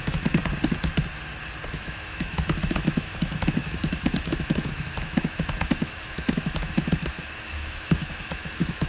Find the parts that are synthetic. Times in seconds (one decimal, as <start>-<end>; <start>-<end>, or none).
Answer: 0.0-0.4; 1.7-8.9